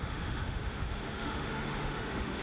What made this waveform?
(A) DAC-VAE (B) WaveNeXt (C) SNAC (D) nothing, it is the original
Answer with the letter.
A